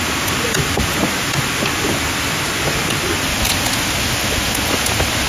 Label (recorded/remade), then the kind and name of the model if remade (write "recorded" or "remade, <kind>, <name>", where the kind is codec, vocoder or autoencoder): recorded